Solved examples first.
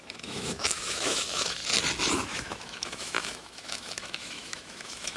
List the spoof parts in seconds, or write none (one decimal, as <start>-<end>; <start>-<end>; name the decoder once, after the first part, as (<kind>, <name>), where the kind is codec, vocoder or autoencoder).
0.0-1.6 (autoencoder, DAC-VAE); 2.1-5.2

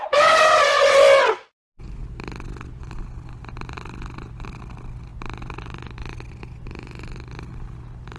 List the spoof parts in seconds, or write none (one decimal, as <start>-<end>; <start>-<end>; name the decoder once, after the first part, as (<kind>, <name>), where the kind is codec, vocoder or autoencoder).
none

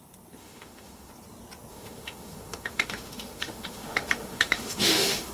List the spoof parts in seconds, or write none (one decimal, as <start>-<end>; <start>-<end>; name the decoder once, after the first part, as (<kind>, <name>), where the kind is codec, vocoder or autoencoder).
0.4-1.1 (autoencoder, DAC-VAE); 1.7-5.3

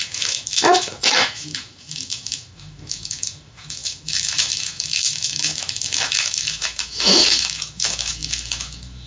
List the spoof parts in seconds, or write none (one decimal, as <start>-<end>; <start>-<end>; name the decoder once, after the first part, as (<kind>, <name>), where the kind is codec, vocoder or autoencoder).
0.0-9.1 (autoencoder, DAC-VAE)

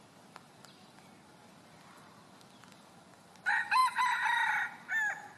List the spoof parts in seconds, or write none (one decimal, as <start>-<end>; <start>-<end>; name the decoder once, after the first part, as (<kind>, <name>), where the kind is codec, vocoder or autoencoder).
none

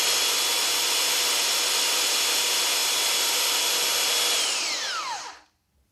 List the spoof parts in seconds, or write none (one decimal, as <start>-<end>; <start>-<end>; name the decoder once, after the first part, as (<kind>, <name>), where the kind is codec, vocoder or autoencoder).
none

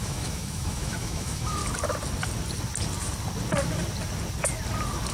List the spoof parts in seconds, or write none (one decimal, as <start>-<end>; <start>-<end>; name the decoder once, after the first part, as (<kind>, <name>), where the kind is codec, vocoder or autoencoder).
0.0-1.6 (autoencoder, DAC-VAE)